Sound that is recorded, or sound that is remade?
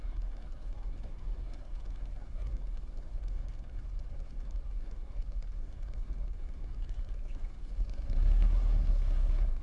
remade